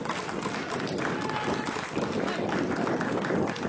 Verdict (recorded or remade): recorded